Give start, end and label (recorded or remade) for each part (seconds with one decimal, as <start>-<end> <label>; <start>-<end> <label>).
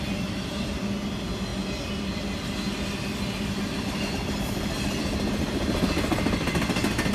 0.0-7.1 recorded